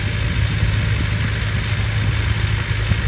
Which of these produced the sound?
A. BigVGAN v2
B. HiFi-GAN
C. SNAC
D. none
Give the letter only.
D